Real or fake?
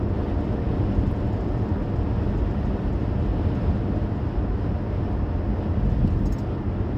real